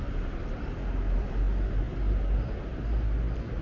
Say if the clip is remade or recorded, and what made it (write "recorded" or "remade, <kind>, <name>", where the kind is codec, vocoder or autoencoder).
recorded